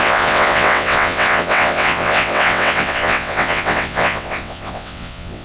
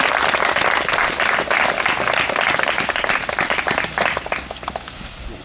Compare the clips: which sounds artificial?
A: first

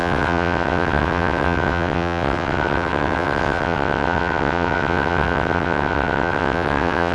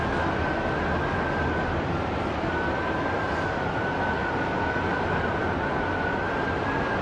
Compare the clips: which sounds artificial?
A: first